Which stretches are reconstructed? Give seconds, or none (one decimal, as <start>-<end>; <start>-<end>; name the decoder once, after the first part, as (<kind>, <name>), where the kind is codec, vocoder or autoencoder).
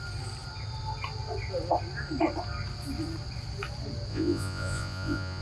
4.1-5.4 (vocoder, Vocos)